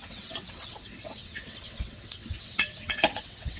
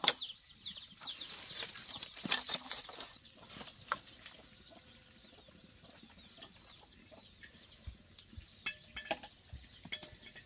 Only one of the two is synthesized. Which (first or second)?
first